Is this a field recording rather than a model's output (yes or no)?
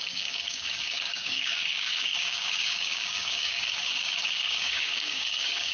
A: no